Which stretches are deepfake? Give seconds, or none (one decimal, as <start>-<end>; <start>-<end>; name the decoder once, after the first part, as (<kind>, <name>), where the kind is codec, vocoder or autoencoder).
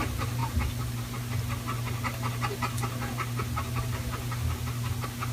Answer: none